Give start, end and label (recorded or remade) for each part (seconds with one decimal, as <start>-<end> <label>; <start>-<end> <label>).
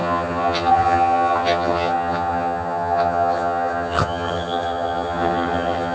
0.0-5.9 remade